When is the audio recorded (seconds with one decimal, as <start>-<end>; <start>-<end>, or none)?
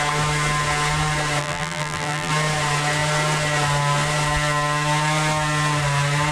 0.0-1.4; 2.3-6.3